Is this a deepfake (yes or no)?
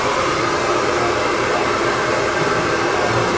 yes